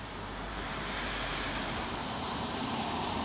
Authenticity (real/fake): fake